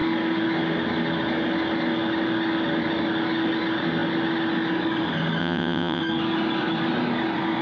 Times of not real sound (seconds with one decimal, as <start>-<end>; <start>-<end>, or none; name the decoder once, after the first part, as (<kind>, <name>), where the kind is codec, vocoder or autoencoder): 5.4-6.0 (vocoder, WaveNeXt)